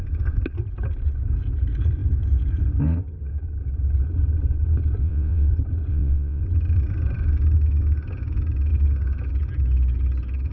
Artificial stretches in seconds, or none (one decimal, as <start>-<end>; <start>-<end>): 5.0-5.5; 5.9-6.4